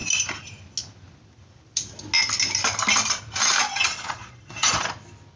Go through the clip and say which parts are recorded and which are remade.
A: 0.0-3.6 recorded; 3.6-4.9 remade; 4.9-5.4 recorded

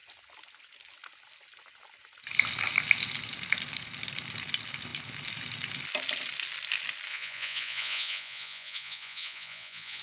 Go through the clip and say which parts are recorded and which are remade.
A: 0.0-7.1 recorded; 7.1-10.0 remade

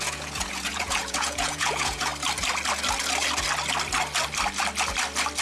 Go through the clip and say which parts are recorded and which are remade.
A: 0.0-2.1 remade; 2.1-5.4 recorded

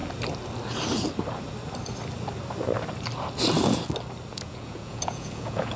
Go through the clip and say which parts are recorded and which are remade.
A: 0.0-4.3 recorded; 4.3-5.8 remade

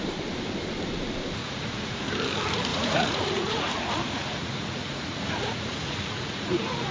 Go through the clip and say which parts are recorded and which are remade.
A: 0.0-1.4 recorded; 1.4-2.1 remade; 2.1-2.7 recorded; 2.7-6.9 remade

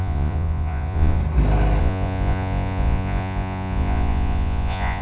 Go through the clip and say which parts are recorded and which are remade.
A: 0.0-1.2 remade; 1.2-1.8 recorded; 1.8-5.0 remade